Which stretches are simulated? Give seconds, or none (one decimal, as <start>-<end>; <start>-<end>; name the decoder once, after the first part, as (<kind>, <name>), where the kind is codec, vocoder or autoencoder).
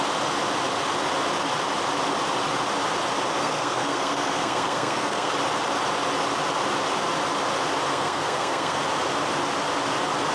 3.4-5.3 (codec, SNAC); 7.9-8.8